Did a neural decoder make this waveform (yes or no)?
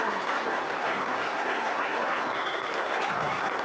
yes